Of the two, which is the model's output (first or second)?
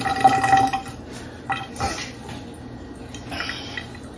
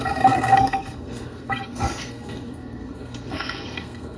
second